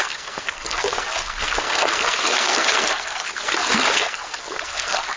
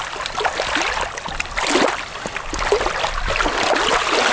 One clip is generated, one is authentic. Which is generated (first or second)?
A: first